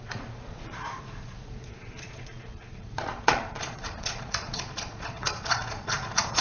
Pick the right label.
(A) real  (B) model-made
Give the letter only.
B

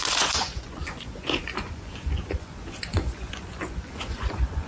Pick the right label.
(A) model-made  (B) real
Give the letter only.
A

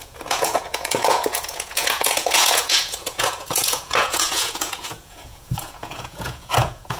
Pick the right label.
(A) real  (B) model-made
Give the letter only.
B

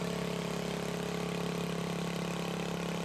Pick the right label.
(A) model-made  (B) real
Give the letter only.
B